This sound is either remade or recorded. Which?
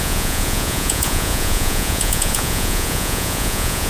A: remade